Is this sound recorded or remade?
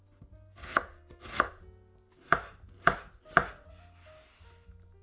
recorded